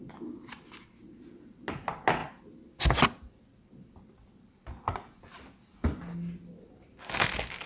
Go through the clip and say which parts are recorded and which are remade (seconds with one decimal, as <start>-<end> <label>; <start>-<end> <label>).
0.0-2.2 recorded; 2.2-4.7 remade; 4.7-7.7 recorded